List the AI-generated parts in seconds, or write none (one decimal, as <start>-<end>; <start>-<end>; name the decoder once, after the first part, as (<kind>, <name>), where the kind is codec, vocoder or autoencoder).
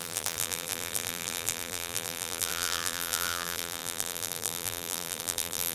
0.0-5.7 (vocoder, BigVGAN v2)